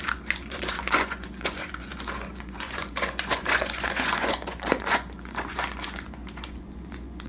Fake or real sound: fake